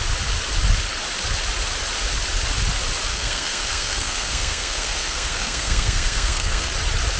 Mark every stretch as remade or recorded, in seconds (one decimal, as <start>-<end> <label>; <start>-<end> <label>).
0.0-3.1 recorded; 3.1-6.7 remade; 6.7-7.2 recorded

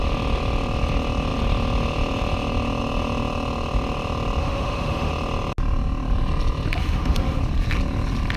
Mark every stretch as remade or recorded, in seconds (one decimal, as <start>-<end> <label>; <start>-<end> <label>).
0.0-4.4 recorded; 4.4-5.1 remade; 5.1-6.8 recorded; 6.8-7.4 remade; 7.4-8.4 recorded

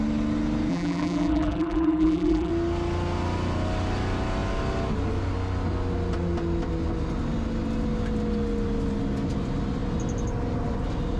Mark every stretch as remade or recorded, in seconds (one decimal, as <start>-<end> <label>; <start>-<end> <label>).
0.0-0.7 recorded; 0.7-2.5 remade; 2.5-11.2 recorded

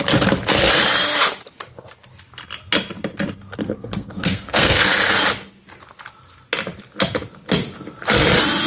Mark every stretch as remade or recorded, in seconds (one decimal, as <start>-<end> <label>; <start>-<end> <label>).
0.0-3.6 recorded; 3.6-4.8 remade; 4.8-8.7 recorded

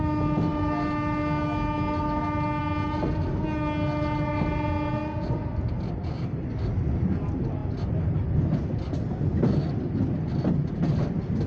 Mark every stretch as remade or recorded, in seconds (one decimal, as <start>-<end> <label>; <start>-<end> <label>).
0.0-11.5 recorded

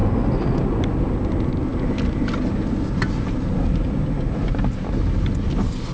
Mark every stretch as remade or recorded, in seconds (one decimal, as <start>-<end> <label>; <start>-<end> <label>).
0.0-5.9 recorded

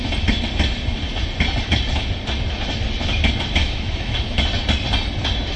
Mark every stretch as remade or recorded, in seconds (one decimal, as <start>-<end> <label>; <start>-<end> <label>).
0.0-3.6 recorded; 3.6-4.4 remade; 4.4-5.6 recorded

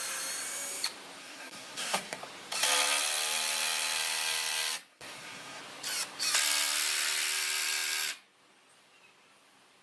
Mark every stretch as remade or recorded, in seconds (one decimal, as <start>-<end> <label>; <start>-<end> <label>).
0.0-1.2 recorded; 1.2-2.2 remade; 2.2-4.9 recorded; 4.9-5.6 remade; 5.6-9.8 recorded